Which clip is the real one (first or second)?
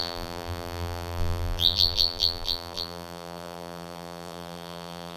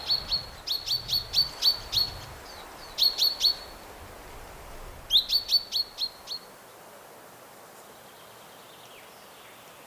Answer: second